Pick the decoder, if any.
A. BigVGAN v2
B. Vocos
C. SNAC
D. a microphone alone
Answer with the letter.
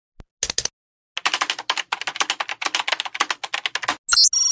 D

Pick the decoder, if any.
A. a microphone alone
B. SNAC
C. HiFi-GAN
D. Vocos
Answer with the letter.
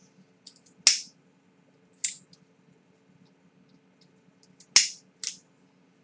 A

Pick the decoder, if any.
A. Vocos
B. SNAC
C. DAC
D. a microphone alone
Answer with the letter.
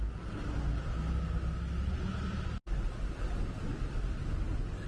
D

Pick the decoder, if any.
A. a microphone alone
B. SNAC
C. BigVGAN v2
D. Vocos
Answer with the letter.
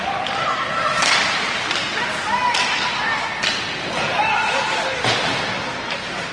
A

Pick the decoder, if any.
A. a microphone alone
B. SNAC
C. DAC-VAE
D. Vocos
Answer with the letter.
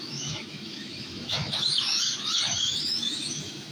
C